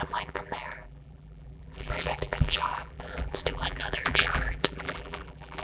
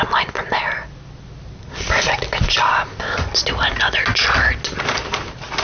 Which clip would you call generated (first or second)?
first